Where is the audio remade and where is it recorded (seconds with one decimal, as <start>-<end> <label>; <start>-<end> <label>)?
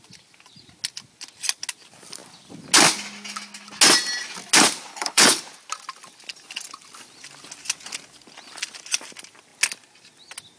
0.0-4.9 recorded; 4.9-5.4 remade; 5.4-10.6 recorded